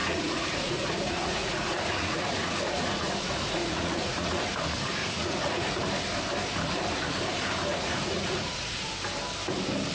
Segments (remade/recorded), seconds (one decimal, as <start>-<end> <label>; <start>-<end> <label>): 0.0-4.5 remade; 4.5-5.0 recorded; 5.0-5.8 remade; 5.8-7.6 recorded; 7.6-8.9 remade; 8.9-9.9 recorded